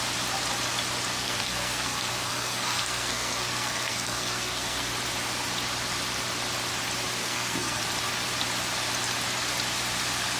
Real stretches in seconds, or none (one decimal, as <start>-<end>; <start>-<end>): 0.0-1.2; 4.9-7.2; 7.8-10.4